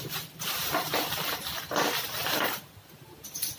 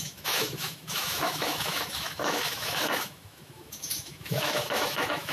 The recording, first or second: first